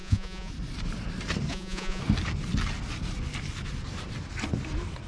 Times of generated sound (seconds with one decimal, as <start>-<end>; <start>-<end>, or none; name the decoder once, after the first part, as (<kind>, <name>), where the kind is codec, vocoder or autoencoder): 0.0-0.5 (vocoder, Vocos); 1.5-2.0